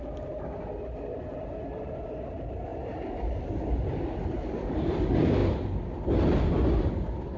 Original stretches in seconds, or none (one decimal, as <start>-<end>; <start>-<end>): 0.0-7.4